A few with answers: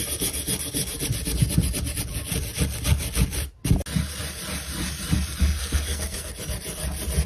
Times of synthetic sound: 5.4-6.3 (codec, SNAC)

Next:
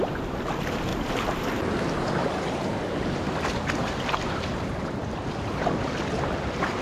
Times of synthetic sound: none

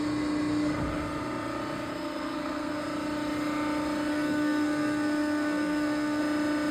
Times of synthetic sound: 1.9-2.8 (codec, SNAC); 4.1-6.2

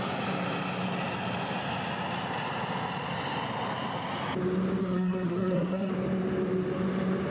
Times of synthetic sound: 4.8-5.9 (codec, SNAC)

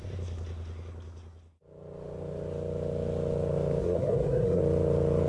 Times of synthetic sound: 3.8-4.6 (codec, SNAC)

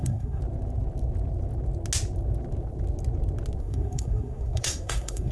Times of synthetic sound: 0.0-0.4 (codec, SNAC); 3.6-5.3

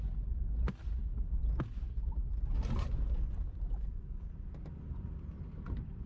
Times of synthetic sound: none

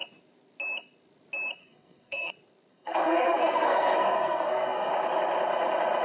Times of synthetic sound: 1.6-2.3 (codec, SNAC); 2.7-4.9